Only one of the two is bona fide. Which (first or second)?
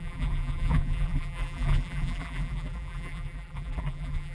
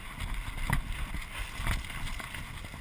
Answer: second